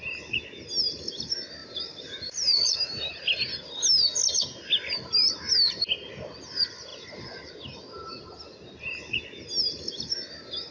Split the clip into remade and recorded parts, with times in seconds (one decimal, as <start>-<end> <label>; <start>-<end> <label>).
0.0-1.6 recorded; 1.6-3.1 remade; 3.1-6.9 recorded; 6.9-7.5 remade; 7.5-10.7 recorded